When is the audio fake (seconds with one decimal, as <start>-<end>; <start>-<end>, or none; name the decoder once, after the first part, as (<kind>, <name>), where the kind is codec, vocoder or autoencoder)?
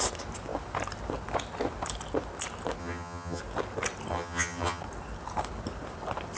2.8-3.4 (vocoder, HiFi-GAN); 4.1-4.8